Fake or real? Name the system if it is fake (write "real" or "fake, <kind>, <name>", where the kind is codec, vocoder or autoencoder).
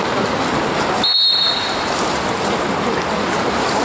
real